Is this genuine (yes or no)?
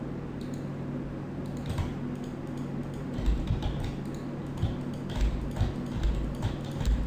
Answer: yes